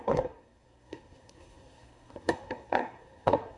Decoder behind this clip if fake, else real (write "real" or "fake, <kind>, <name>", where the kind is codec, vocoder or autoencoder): fake, codec, SNAC